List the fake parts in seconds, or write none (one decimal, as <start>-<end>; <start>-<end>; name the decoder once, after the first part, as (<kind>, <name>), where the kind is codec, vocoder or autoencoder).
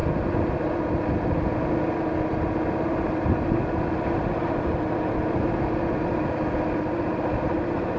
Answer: none